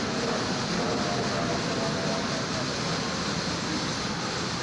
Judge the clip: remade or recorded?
recorded